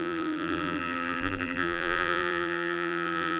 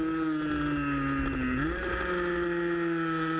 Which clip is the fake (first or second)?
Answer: first